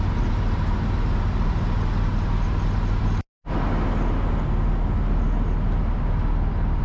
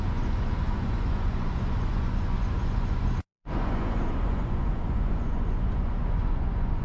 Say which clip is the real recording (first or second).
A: first